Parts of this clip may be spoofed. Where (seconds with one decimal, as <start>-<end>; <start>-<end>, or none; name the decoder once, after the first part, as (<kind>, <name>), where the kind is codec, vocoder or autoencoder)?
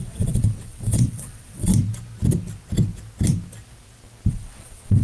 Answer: 0.0-1.7 (vocoder, WaveNeXt); 4.3-5.0